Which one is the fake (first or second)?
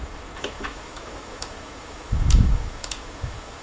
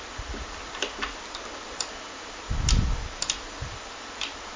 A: first